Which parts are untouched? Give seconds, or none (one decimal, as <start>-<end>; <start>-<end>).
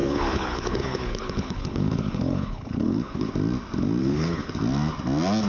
3.3-4.0; 4.5-5.5